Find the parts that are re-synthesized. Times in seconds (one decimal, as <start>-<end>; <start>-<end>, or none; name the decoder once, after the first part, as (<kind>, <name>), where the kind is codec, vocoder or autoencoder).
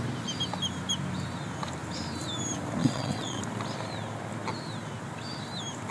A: 2.8-3.4 (vocoder, WaveNeXt)